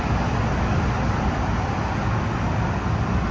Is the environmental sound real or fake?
real